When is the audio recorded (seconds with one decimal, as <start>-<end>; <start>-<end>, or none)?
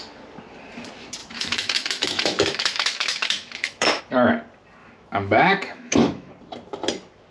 0.0-1.2; 4.0-4.8; 6.3-7.3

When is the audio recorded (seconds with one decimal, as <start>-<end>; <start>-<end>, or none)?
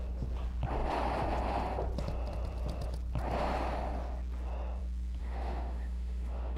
0.0-5.2